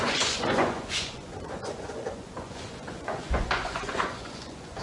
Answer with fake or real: fake